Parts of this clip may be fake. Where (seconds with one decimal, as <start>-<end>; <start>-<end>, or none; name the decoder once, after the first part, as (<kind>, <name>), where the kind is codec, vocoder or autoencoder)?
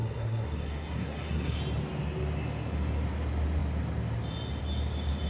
0.0-1.6 (codec, SNAC)